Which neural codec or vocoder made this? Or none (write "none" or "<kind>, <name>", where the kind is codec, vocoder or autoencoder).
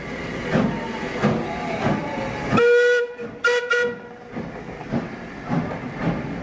none